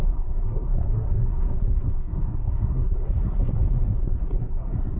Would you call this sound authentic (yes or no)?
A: no